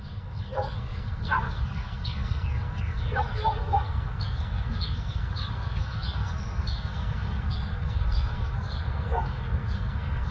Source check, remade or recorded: remade